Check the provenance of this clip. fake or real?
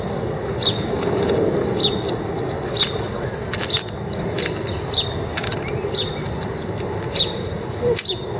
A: real